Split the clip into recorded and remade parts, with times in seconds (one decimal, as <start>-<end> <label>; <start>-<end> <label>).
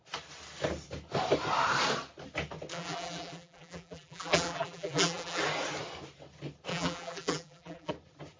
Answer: 0.0-2.7 recorded; 2.7-5.4 remade; 5.4-6.7 recorded; 6.7-7.9 remade; 7.9-8.4 recorded